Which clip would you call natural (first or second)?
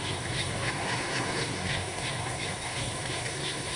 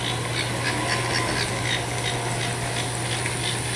second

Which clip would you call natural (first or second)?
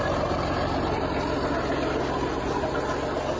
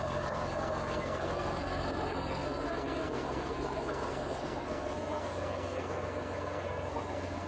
first